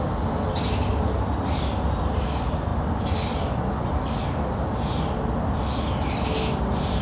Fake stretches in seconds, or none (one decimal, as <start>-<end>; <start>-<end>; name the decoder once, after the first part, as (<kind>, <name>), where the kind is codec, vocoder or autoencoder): none